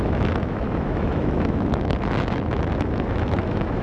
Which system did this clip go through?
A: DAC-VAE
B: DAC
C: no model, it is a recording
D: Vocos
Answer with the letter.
A